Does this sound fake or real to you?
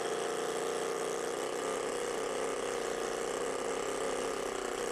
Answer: real